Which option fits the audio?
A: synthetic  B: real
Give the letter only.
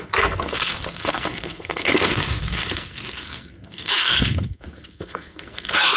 A